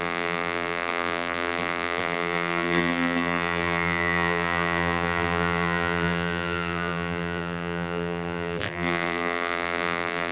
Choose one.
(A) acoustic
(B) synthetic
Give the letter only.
B